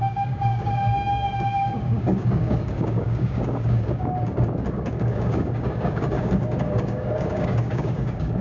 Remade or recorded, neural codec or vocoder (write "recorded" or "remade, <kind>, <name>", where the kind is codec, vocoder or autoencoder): remade, codec, DAC